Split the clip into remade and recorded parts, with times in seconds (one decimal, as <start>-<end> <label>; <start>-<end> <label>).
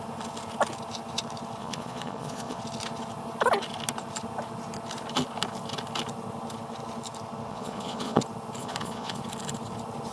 0.0-1.6 recorded; 1.6-2.6 remade; 2.6-7.5 recorded; 7.5-8.2 remade; 8.2-8.6 recorded; 8.6-9.2 remade; 9.2-10.1 recorded